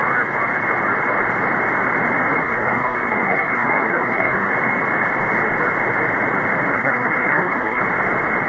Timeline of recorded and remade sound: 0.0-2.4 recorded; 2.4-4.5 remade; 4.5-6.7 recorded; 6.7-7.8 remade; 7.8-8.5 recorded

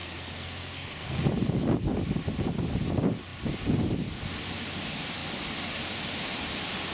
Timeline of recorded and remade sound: 0.0-1.2 remade; 1.2-6.9 recorded

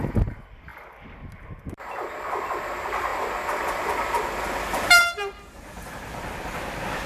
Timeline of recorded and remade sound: 0.0-7.1 recorded

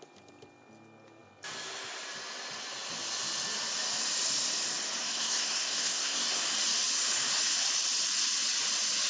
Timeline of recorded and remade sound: 0.0-5.0 recorded; 5.0-6.4 remade; 6.4-9.1 recorded

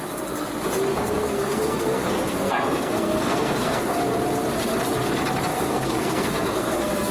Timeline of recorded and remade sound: 0.0-0.9 recorded; 0.9-4.0 remade; 4.0-5.5 recorded; 5.5-7.1 remade

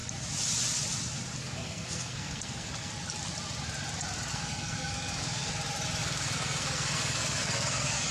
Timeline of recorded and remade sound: 0.0-1.4 recorded; 1.4-2.9 remade; 2.9-4.3 recorded; 4.3-5.5 remade; 5.5-6.0 recorded; 6.0-8.1 remade

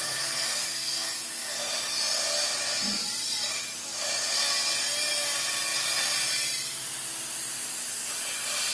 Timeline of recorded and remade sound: 0.0-1.7 remade; 1.7-8.7 recorded